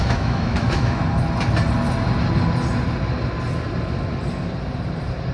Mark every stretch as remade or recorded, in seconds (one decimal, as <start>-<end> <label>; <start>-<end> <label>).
0.0-1.0 remade; 1.0-5.3 recorded